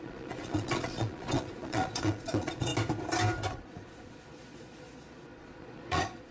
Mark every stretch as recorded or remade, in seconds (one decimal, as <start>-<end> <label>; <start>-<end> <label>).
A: 0.0-2.7 remade; 2.7-3.5 recorded; 3.5-6.3 remade